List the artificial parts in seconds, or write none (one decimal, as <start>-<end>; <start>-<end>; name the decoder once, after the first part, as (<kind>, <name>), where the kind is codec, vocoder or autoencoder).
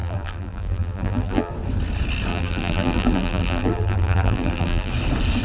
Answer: 0.0-1.5 (vocoder, BigVGAN v2); 2.3-4.9